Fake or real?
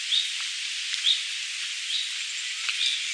real